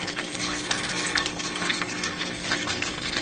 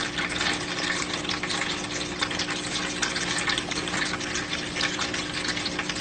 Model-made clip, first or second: first